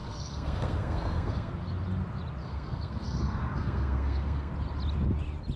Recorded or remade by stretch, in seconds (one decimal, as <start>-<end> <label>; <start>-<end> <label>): 0.0-1.5 remade; 1.5-2.4 recorded; 2.4-4.5 remade; 4.5-5.6 recorded